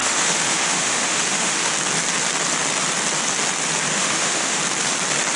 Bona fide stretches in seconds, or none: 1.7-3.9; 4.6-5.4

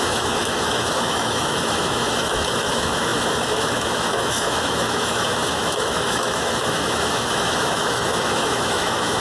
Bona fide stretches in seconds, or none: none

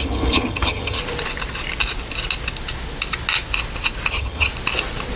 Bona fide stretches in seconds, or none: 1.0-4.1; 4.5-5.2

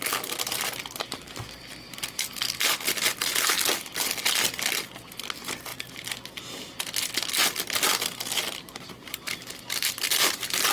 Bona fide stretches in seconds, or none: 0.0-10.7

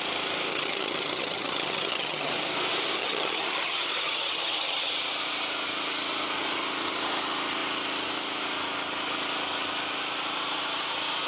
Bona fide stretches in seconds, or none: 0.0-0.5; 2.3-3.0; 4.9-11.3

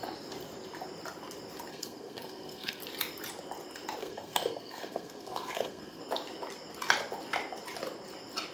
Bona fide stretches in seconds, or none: 0.0-1.7; 2.8-4.0; 6.0-8.5

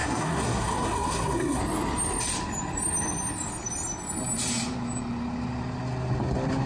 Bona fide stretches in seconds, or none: 1.6-6.7

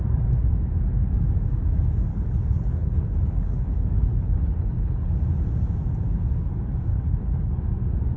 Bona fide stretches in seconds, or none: 0.0-2.1; 5.1-6.9; 7.6-8.2